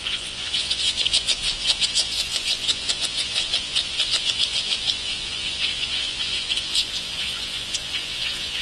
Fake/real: fake